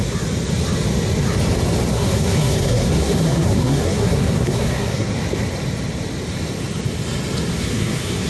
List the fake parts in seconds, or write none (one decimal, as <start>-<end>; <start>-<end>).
1.9-5.1; 7.5-8.3